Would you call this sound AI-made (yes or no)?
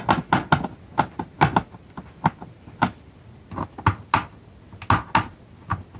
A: no